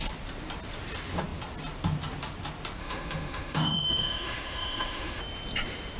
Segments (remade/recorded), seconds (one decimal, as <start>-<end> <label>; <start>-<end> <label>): 0.0-2.8 recorded; 2.8-5.2 remade; 5.2-6.0 recorded